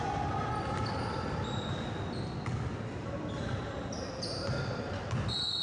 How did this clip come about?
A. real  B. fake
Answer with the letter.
A